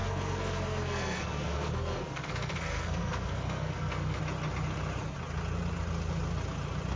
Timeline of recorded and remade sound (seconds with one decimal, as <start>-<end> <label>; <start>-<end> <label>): 0.0-4.2 remade; 4.2-7.0 recorded